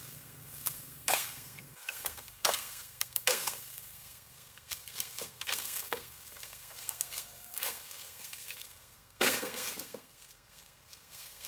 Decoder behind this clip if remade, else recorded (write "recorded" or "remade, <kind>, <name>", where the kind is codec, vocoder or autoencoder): remade, codec, SNAC